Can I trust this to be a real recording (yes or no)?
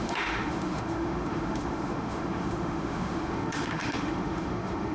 no